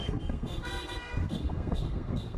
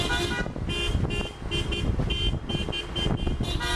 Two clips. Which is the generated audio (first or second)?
first